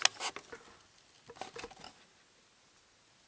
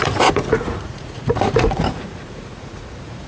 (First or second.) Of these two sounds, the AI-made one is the second